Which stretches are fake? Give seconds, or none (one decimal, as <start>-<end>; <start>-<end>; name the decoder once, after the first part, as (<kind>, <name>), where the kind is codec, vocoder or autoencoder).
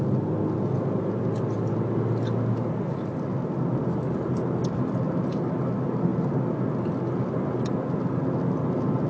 none